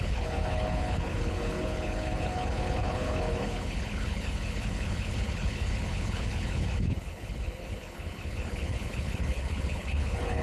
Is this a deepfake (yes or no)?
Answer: yes